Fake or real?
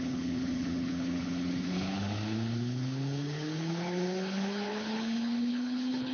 fake